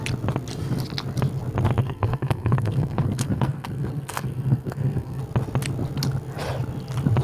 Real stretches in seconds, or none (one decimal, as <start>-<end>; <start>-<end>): 0.0-1.8; 5.2-7.2